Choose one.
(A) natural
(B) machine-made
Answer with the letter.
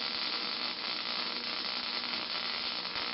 A